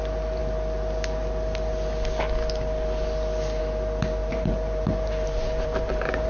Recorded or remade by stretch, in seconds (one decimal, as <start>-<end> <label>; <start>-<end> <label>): 0.0-4.2 recorded; 4.2-6.3 remade